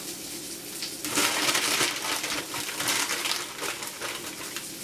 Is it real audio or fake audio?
real